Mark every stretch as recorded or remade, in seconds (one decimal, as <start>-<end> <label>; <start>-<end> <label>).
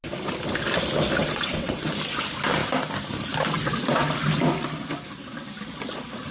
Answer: 0.0-1.2 recorded; 1.2-1.9 remade; 1.9-6.3 recorded